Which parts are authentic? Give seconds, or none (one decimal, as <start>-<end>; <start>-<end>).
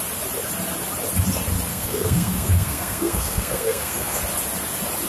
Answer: 0.0-1.7; 4.2-5.1